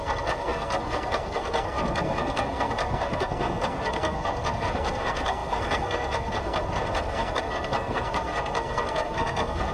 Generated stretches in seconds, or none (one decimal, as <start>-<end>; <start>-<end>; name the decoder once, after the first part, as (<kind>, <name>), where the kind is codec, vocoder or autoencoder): 0.0-9.7 (codec, SNAC)